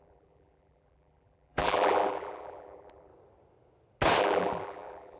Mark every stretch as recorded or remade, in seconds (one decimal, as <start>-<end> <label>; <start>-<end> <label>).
0.0-3.1 remade; 3.1-4.2 recorded; 4.2-5.2 remade